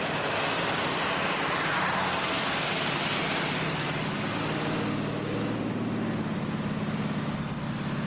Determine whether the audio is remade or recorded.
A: recorded